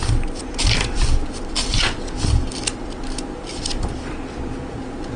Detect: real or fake real